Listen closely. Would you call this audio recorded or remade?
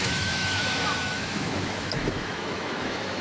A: remade